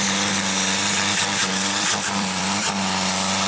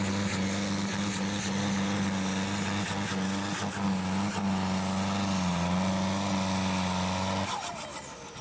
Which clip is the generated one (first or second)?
first